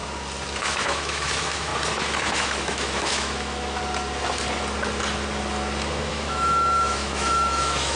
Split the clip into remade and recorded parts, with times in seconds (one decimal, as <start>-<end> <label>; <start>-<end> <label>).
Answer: 0.0-0.6 recorded; 0.6-1.7 remade; 1.7-2.2 recorded; 2.2-3.8 remade; 3.8-6.1 recorded; 6.1-8.0 remade